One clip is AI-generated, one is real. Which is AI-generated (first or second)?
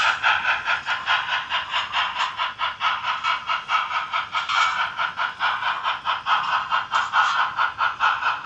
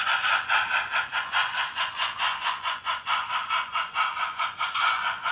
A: second